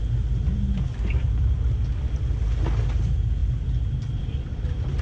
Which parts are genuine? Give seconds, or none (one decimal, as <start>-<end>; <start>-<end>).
0.0-5.0